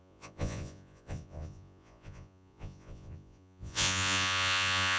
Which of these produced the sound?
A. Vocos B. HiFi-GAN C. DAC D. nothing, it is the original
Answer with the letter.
A